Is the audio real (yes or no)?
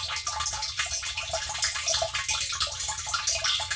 yes